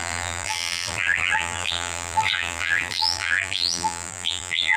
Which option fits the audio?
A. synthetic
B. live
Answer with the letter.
A